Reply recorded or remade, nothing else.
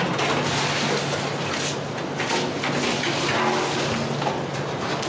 recorded